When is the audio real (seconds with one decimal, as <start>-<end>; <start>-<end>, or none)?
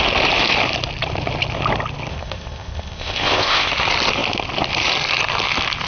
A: 0.0-2.1; 3.7-5.9